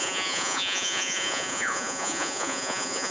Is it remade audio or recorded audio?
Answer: remade